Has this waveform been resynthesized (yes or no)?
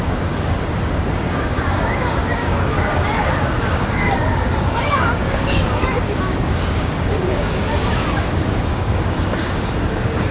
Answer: yes